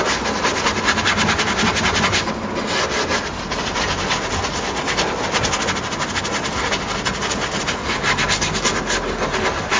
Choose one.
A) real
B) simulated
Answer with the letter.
A